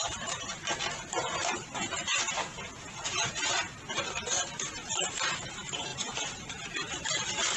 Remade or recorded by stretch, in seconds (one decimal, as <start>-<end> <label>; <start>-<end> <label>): 0.0-5.9 remade; 5.9-6.4 recorded; 6.4-7.6 remade